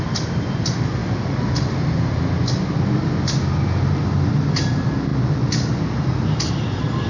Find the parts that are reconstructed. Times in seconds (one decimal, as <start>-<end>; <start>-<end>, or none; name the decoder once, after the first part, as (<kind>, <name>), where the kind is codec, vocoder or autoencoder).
none